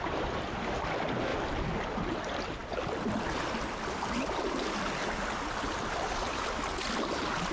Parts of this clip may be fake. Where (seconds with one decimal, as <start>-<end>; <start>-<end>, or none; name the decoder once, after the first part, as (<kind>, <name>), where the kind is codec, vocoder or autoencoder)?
none